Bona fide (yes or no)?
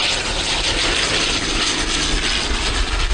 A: yes